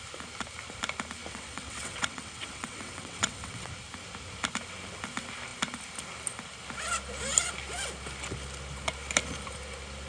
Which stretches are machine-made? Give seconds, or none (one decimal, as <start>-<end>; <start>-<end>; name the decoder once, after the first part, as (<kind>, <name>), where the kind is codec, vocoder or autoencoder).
1.3-3.7 (vocoder, WaveNeXt)